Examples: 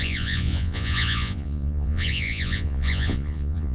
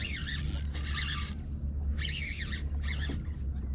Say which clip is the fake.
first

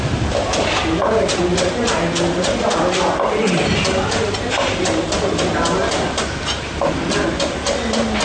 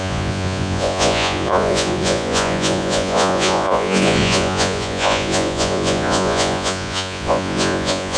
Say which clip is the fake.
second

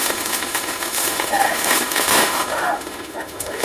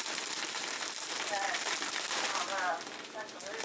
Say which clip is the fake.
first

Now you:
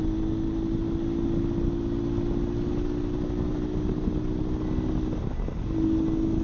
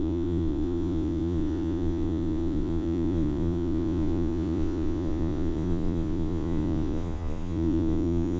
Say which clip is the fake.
second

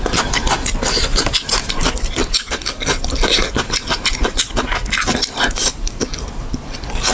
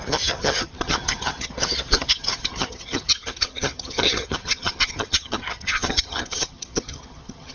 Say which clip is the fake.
second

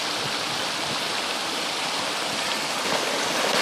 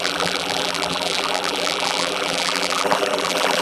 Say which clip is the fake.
second